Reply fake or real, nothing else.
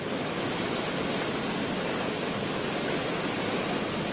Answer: real